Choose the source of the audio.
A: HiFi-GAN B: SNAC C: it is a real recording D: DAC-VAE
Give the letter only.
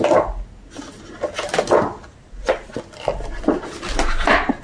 C